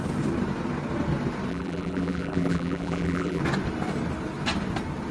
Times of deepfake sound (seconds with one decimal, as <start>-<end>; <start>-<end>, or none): 1.5-3.4